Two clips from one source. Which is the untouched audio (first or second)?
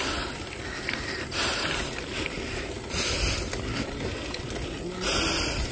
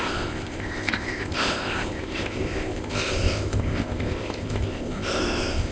first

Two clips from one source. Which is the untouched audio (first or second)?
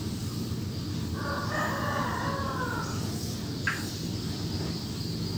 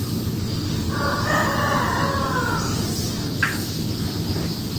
second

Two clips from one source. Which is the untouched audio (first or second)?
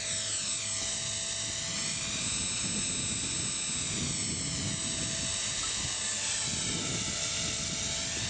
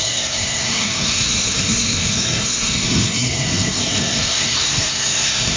first